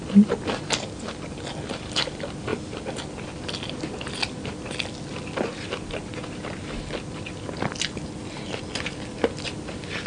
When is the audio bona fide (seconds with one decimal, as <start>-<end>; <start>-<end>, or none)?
0.0-2.5; 3.0-10.1